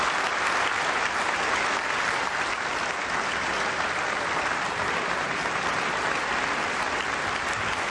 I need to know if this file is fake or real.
real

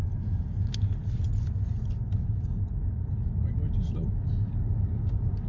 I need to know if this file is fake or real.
real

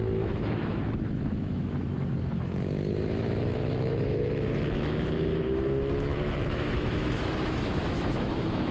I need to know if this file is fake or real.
fake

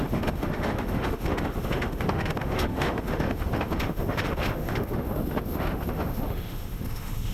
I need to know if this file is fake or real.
fake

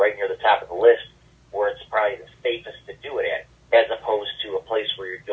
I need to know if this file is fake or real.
real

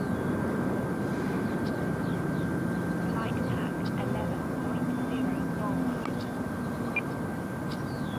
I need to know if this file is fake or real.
real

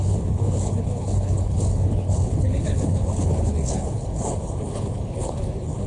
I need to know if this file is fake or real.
fake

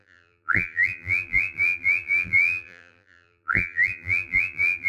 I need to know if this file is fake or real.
fake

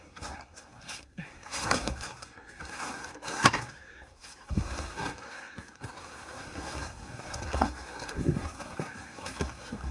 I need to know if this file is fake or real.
fake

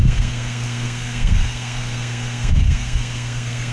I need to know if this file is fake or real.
fake